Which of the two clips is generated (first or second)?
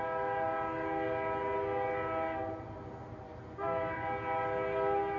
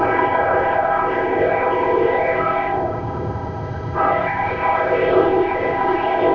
second